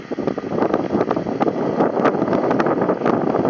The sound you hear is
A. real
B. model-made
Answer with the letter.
A